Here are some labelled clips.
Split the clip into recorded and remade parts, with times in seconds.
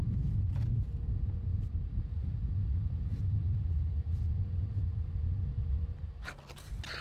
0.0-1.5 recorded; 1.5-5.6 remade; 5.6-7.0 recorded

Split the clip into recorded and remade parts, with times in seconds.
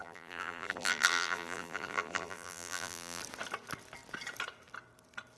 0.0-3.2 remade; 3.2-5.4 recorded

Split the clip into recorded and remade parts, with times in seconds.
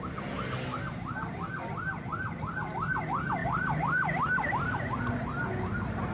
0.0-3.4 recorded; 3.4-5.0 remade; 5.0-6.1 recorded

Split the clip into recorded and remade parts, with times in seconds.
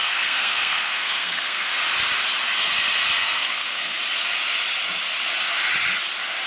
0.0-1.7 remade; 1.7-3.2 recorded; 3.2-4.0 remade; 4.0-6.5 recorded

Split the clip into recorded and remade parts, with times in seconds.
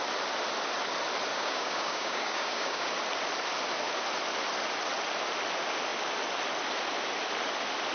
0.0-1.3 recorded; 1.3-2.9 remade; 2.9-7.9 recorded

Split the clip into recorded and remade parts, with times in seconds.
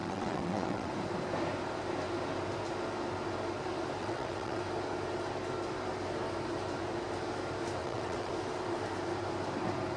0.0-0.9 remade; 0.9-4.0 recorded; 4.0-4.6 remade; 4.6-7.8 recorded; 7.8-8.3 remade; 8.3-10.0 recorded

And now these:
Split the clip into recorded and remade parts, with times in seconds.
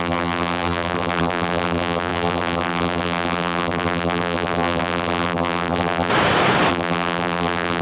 0.0-6.1 remade; 6.1-6.7 recorded; 6.7-7.8 remade